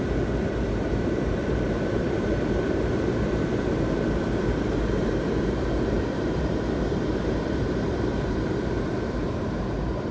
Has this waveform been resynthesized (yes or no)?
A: yes